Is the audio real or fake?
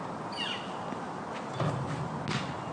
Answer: real